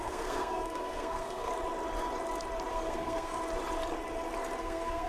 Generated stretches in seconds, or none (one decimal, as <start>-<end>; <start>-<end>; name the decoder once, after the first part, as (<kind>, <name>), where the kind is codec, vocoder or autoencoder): 0.0-1.5 (codec, SNAC); 2.7-3.4; 4.6-5.1